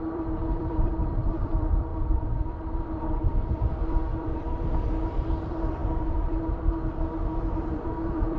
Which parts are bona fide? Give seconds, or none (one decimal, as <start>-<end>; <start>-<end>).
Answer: none